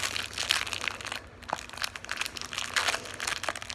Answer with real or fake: real